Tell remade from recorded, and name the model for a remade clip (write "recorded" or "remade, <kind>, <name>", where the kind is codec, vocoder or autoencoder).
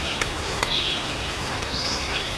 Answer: remade, codec, SNAC